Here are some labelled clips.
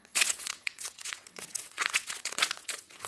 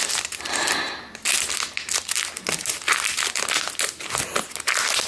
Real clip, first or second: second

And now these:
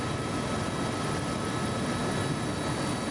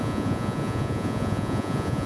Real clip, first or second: first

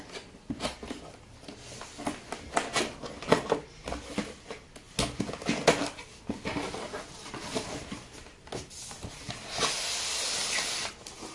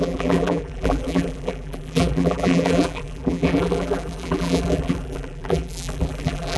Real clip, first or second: first